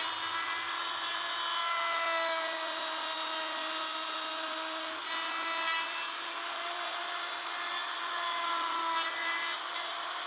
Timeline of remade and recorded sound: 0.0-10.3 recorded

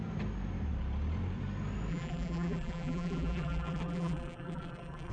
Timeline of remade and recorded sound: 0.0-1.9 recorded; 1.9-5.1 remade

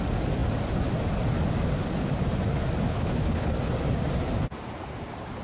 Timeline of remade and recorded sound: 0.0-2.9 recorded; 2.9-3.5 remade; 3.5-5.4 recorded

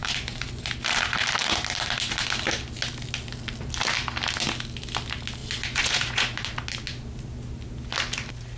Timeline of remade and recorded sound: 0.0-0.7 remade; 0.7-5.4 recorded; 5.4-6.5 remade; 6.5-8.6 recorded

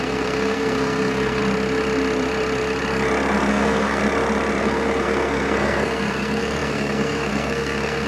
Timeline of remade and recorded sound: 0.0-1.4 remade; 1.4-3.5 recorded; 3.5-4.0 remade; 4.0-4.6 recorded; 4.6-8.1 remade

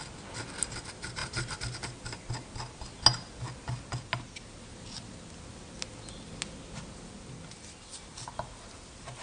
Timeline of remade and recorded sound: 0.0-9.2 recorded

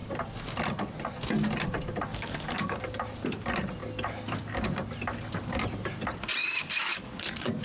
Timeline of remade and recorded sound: 0.0-2.1 recorded; 2.1-2.9 remade; 2.9-6.4 recorded; 6.4-7.6 remade

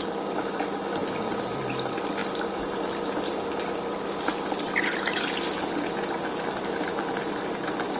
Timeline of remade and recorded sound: 0.0-1.0 recorded; 1.0-1.7 remade; 1.7-8.0 recorded